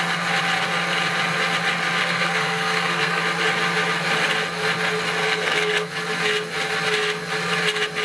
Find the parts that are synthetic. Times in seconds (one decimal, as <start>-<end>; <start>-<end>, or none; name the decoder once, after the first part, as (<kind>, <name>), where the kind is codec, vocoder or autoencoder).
2.0-3.2 (codec, SNAC); 5.2-5.9